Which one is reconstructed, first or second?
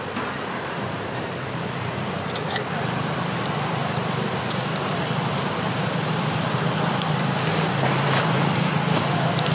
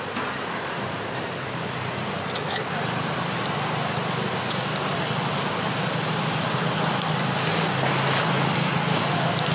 first